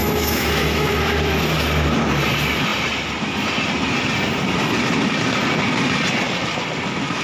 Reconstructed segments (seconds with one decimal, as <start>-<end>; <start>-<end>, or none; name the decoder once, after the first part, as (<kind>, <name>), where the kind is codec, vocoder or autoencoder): 0.0-0.9 (autoencoder, DAC-VAE)